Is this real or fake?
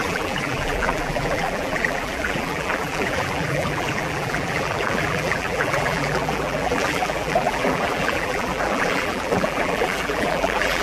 fake